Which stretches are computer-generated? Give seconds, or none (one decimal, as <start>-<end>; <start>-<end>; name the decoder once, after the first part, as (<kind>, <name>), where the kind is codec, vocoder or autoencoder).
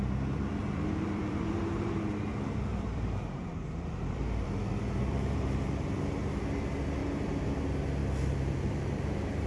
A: 0.6-1.9 (vocoder, BigVGAN v2); 2.3-6.0; 8.0-9.5